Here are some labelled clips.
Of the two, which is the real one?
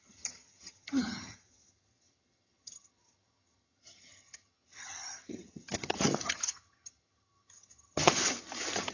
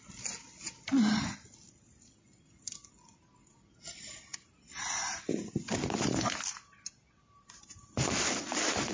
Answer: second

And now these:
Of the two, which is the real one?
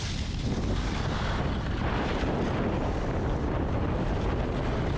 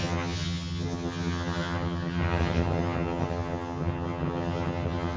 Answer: first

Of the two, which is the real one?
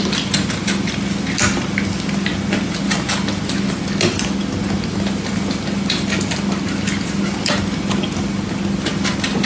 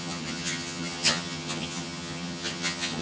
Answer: first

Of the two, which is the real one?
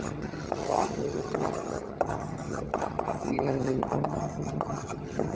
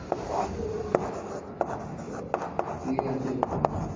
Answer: second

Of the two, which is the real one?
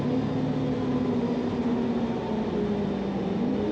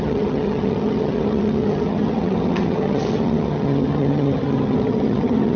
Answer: first